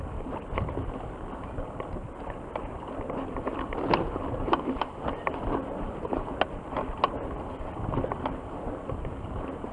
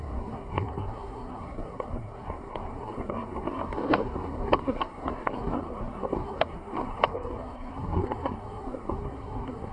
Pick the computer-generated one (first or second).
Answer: second